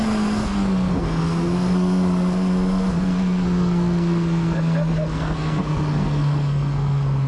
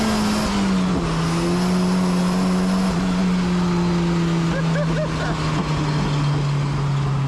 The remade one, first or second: first